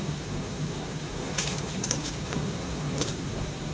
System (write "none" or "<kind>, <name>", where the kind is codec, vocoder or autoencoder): codec, SNAC